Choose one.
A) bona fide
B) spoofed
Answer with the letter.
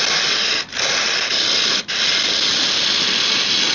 A